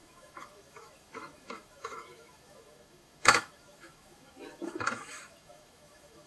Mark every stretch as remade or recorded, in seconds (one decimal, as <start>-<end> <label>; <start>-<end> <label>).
0.0-6.3 remade